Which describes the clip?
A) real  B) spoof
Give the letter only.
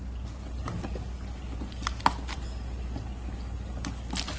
A